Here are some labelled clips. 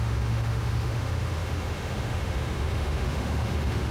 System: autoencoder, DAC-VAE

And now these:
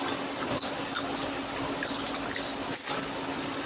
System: none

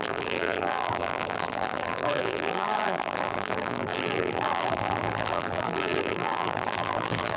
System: vocoder, BigVGAN v2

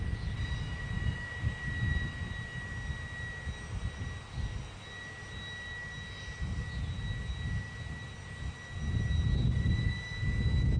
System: none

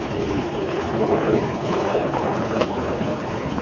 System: codec, HILCodec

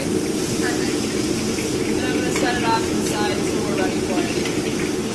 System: none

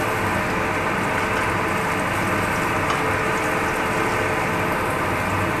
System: none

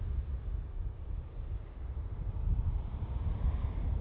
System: none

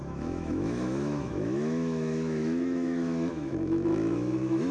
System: autoencoder, DAC-VAE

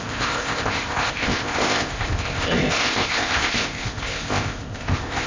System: codec, ZipCodec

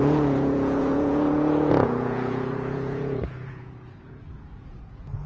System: vocoder, Vocos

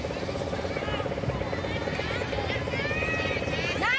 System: none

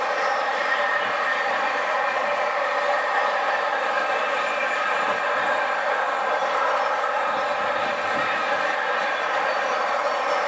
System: none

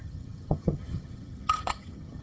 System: vocoder, HiFi-GAN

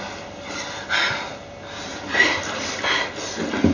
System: none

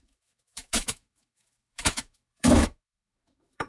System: autoencoder, DAC-VAE